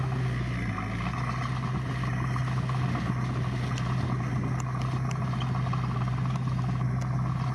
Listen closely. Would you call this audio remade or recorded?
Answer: recorded